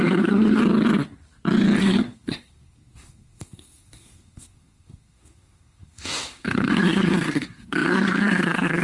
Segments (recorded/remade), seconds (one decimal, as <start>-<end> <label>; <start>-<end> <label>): 0.0-0.6 remade; 0.6-1.8 recorded; 1.8-8.8 remade